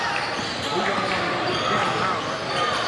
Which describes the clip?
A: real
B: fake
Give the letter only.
A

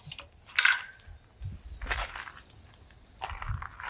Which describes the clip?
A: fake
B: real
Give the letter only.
B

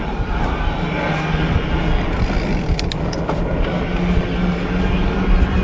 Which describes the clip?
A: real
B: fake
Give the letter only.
A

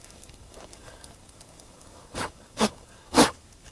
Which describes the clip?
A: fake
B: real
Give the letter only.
A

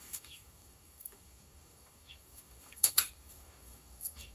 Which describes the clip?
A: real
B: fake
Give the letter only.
B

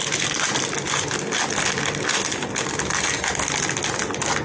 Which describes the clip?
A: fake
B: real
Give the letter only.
B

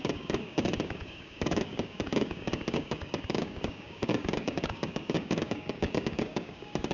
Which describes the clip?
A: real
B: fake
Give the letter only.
B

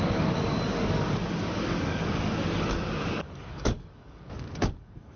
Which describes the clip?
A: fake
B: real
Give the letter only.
A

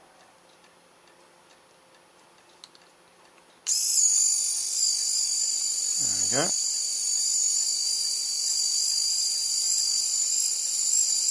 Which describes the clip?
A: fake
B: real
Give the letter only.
B